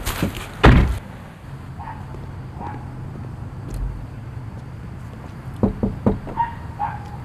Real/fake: real